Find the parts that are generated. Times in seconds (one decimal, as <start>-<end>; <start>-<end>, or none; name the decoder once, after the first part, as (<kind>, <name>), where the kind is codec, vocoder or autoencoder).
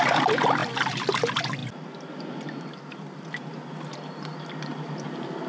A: 0.6-1.2 (vocoder, BigVGAN v2); 4.7-5.5